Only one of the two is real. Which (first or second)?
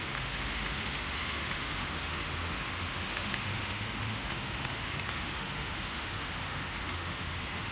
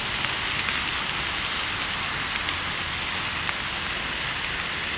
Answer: second